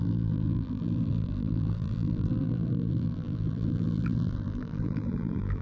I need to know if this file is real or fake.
fake